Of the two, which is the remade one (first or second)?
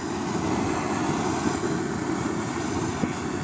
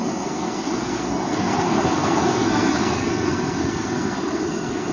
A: second